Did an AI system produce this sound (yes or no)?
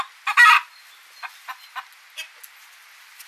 no